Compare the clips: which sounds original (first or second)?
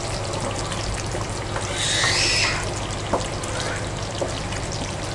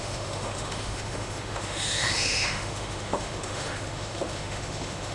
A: first